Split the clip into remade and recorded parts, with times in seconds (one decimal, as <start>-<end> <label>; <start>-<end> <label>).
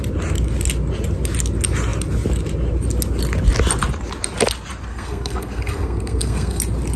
0.0-4.9 recorded; 4.9-6.6 remade; 6.6-7.0 recorded